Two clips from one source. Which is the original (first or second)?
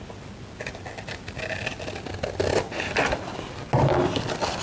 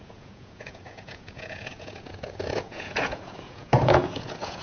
first